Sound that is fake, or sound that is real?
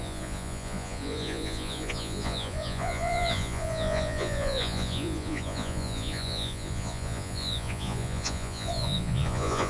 fake